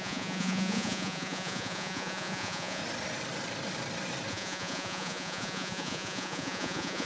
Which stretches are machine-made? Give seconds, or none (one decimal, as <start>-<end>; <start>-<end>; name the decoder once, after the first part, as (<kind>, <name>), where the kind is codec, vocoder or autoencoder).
0.0-2.8 (vocoder, Vocos); 4.3-7.1